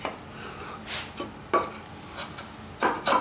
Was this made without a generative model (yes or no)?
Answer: yes